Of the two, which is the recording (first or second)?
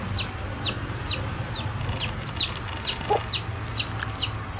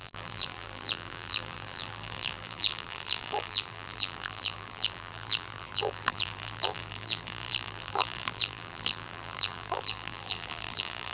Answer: first